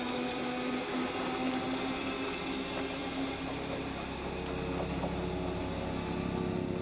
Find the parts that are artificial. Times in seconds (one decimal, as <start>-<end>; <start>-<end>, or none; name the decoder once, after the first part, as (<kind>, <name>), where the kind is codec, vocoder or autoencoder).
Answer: none